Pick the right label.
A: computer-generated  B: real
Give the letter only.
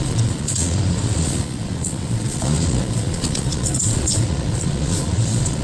A